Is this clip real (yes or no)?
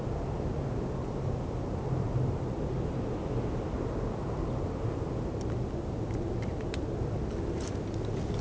yes